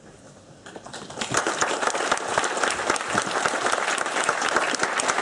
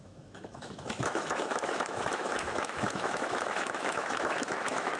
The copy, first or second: second